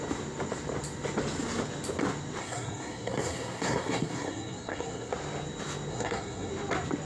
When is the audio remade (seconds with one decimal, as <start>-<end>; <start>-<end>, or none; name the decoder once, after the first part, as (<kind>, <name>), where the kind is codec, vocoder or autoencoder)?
2.4-5.1 (codec, SNAC); 5.9-6.5